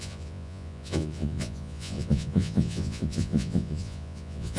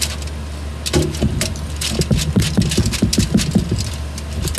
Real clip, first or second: second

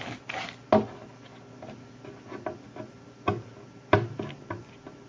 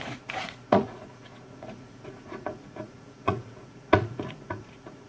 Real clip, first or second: first